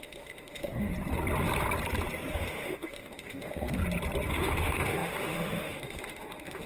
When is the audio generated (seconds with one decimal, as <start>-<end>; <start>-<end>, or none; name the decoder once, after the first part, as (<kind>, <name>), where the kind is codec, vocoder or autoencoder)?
0.0-0.9 (autoencoder, DAC-VAE); 2.3-3.8; 4.3-6.7